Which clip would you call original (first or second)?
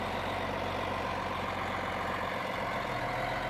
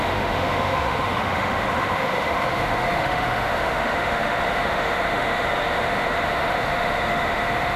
first